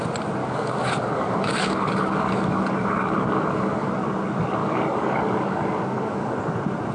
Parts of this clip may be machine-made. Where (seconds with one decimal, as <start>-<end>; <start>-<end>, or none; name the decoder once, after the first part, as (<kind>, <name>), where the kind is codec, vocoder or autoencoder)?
0.4-3.9 (codec, DAC); 4.6-6.4